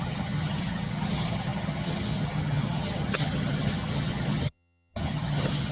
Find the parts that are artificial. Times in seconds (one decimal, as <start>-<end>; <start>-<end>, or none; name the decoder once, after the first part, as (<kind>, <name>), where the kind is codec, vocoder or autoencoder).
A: 0.0-5.7 (vocoder, HiFi-GAN)